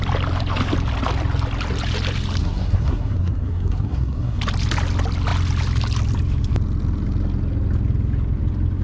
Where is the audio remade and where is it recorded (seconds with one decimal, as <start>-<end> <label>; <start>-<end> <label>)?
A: 0.0-2.4 recorded; 2.4-4.4 remade; 4.4-8.8 recorded